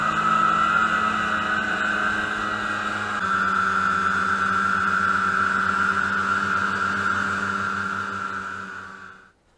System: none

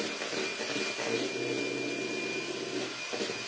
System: none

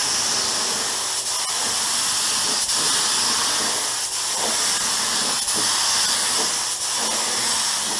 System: none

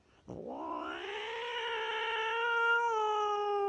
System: none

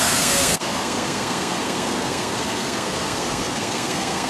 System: codec, SNAC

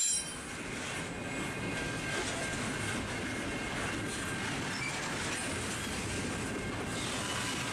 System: none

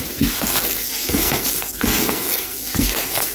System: codec, SNAC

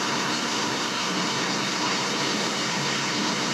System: codec, SNAC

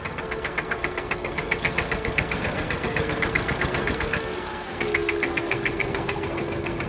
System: codec, SNAC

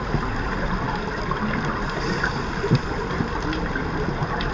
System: none